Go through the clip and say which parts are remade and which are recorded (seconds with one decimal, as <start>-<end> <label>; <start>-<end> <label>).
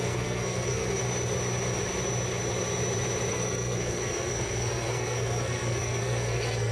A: 0.0-1.0 remade; 1.0-3.3 recorded; 3.3-6.7 remade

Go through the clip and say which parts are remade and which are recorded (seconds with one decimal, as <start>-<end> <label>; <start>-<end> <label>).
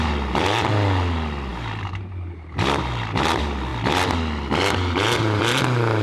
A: 0.0-1.5 recorded; 1.5-3.0 remade; 3.0-6.0 recorded